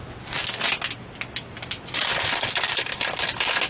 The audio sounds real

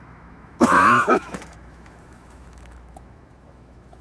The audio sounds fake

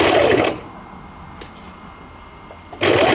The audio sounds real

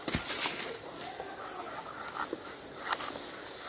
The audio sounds real